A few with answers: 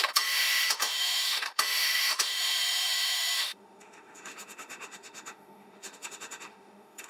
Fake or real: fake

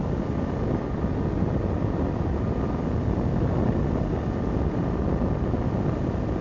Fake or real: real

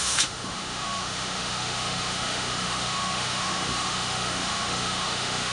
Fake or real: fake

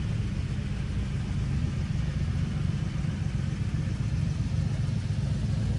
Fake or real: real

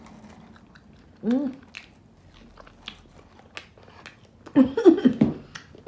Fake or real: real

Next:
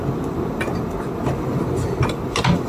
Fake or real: real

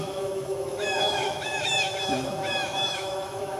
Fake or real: fake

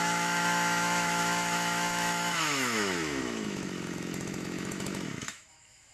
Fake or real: fake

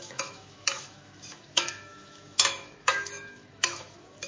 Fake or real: fake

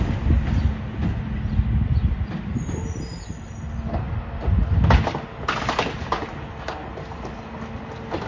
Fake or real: real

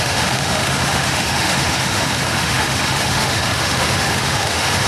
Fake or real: fake